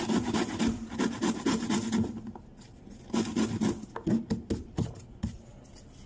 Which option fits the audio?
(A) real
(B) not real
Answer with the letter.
A